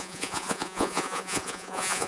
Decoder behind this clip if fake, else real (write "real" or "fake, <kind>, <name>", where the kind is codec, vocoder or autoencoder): fake, vocoder, Vocos